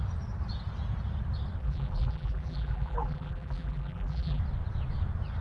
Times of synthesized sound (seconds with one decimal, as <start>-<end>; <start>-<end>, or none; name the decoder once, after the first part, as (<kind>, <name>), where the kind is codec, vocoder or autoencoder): 1.6-4.4 (vocoder, BigVGAN v2)